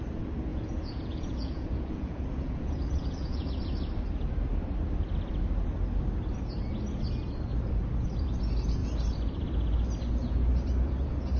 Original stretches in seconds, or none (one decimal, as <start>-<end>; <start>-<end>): 0.0-0.5; 3.5-11.4